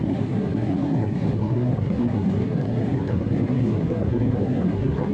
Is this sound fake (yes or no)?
yes